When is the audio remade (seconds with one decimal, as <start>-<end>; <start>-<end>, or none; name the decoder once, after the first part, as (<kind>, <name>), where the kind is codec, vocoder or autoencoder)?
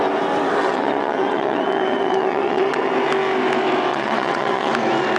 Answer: 0.6-2.9 (vocoder, WaveNeXt); 3.9-4.7